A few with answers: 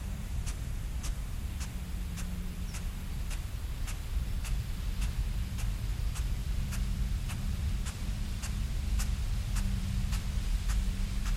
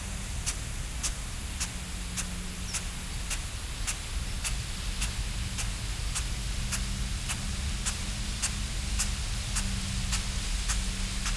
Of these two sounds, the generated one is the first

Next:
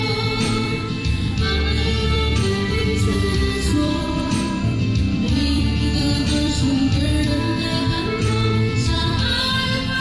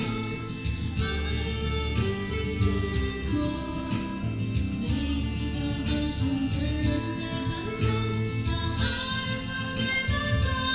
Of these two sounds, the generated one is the first